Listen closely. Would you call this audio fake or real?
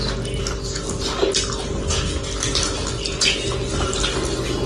real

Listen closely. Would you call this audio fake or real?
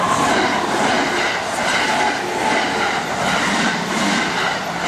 real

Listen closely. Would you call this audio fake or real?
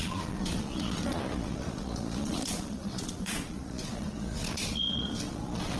fake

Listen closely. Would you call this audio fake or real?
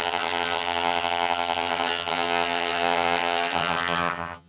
fake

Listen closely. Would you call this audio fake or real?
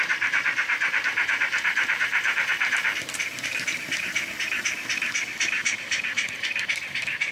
fake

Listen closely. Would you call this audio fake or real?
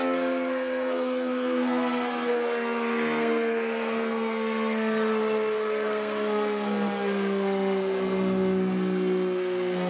fake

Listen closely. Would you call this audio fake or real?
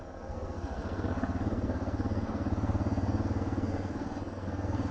fake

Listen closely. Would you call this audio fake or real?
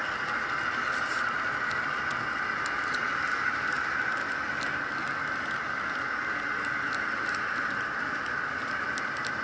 real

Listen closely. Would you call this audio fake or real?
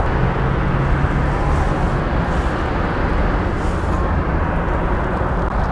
real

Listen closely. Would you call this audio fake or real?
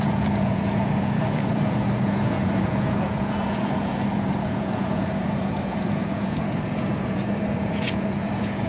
fake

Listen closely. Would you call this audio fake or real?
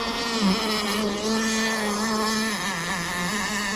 real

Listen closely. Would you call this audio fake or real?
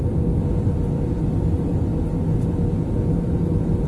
real